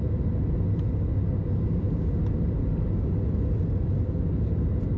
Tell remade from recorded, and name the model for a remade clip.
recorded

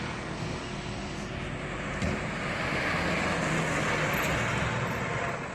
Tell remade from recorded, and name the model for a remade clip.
recorded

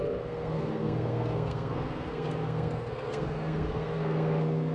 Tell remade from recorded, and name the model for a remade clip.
remade, codec, SNAC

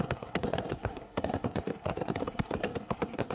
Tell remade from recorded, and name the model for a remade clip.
remade, codec, SNAC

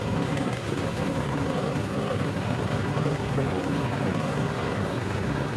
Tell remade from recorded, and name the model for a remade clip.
remade, codec, SNAC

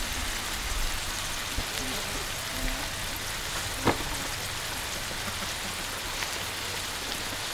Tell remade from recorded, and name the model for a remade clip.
recorded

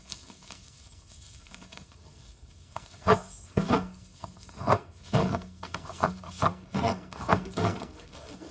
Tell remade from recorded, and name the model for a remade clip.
remade, codec, SNAC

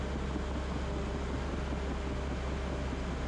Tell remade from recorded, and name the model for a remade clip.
recorded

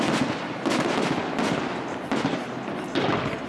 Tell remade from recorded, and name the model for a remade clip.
recorded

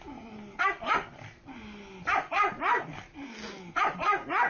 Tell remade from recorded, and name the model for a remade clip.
recorded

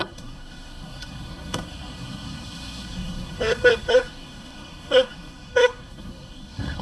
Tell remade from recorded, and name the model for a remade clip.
remade, codec, SNAC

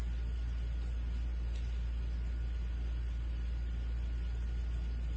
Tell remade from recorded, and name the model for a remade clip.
recorded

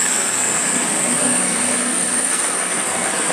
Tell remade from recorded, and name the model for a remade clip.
remade, codec, SNAC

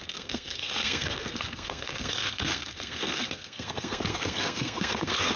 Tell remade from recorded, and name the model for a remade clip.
remade, codec, SNAC